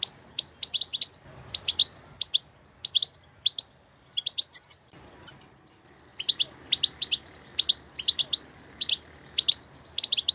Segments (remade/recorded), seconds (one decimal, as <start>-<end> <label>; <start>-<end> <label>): 0.0-10.3 recorded